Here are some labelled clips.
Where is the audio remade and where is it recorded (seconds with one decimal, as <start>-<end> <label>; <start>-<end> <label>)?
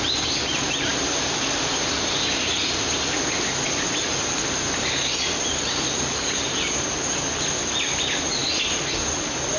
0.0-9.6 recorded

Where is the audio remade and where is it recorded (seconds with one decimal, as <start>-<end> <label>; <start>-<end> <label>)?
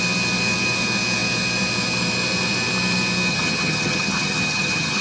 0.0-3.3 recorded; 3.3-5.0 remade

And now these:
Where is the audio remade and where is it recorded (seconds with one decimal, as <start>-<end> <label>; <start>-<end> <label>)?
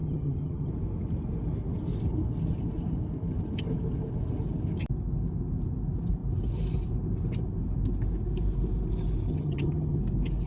0.0-0.7 remade; 0.7-9.3 recorded; 9.3-10.0 remade; 10.0-10.5 recorded